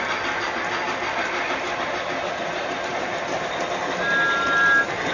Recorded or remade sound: recorded